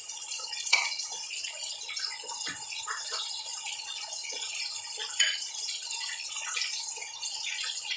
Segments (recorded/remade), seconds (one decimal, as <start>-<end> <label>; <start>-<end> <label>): 0.0-8.0 remade